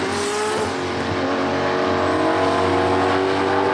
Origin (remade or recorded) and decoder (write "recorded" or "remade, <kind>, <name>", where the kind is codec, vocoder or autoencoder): recorded